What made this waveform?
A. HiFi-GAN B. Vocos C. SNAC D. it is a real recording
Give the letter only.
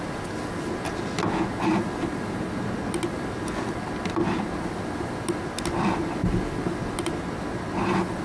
D